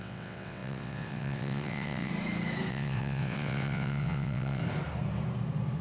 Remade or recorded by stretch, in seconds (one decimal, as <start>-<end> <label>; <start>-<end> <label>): 0.0-2.1 remade; 2.1-2.7 recorded; 2.7-4.6 remade; 4.6-5.8 recorded